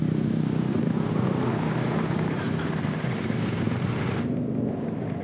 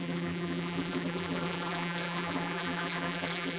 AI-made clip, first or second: second